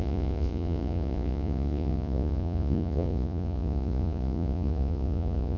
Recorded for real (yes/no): no